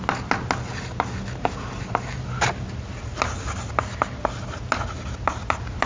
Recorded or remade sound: recorded